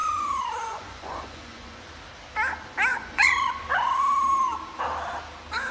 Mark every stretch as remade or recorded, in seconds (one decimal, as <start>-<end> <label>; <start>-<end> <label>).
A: 0.0-1.8 remade; 1.8-2.9 recorded; 2.9-4.0 remade; 4.0-5.7 recorded